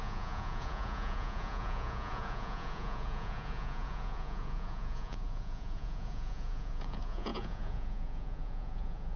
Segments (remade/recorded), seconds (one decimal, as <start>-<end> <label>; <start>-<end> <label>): 0.0-9.2 remade